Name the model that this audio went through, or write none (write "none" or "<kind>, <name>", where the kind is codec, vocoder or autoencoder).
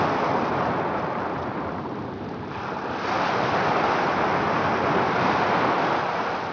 none